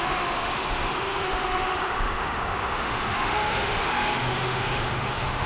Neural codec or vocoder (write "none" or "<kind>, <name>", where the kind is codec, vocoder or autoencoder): autoencoder, DAC-VAE